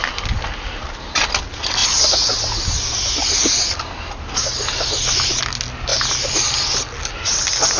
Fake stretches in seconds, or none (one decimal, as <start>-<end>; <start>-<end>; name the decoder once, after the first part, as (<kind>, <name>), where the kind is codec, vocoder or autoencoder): none